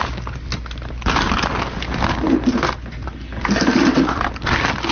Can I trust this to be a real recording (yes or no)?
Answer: yes